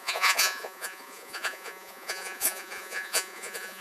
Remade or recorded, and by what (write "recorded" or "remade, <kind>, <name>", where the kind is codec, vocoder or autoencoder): remade, vocoder, Vocos